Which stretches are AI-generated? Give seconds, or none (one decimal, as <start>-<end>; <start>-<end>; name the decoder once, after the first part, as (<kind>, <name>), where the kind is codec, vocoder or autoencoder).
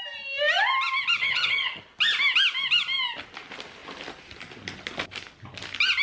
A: 1.2-1.8 (vocoder, HiFi-GAN)